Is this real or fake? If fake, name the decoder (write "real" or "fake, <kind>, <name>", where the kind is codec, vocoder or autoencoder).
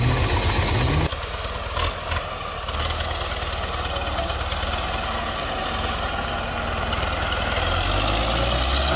real